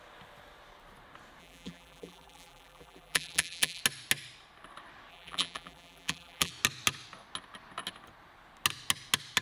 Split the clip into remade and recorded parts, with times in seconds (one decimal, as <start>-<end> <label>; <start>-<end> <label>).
0.0-1.4 recorded; 1.4-3.8 remade; 3.8-5.1 recorded; 5.1-6.5 remade; 6.5-9.4 recorded